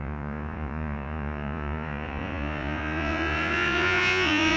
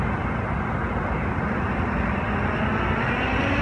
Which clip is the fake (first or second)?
first